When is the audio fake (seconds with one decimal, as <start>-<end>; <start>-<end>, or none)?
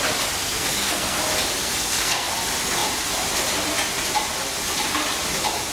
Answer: 0.4-1.2; 1.6-2.3